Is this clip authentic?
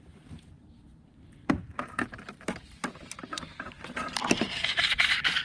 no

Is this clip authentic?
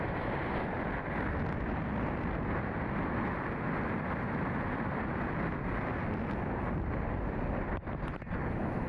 yes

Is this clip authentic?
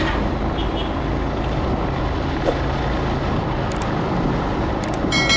yes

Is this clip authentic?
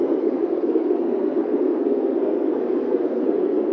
no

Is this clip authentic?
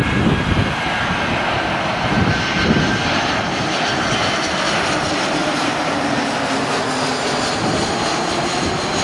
yes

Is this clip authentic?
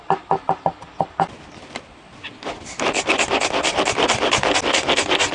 yes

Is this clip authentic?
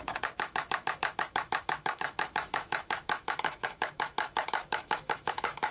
no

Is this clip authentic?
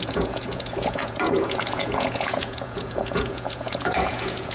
no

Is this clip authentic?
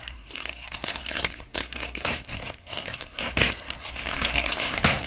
no